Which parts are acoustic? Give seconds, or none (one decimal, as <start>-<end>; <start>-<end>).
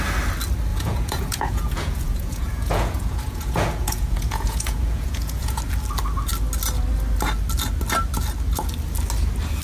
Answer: 0.0-0.7; 5.6-9.6